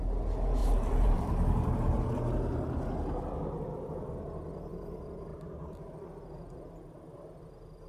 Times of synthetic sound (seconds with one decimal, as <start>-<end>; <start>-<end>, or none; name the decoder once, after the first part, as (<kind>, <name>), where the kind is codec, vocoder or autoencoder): 0.6-2.1 (vocoder, BigVGAN v2); 5.3-5.9